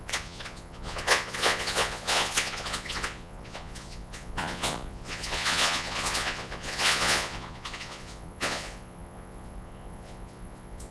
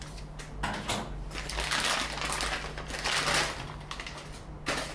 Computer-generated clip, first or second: first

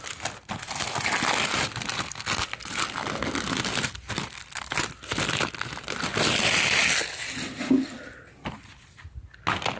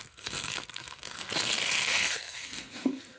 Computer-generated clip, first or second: second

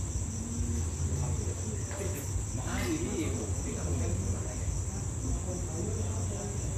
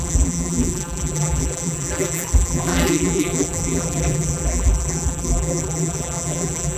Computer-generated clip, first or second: second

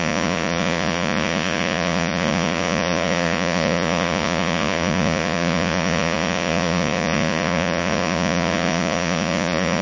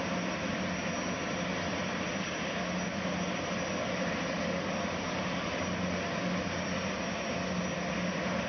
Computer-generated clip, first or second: first